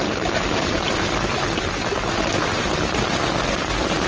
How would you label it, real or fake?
real